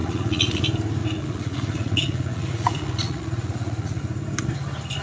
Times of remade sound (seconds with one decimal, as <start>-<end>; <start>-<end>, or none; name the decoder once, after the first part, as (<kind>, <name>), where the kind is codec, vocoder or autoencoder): 0.0-0.6 (vocoder, Vocos); 1.0-4.0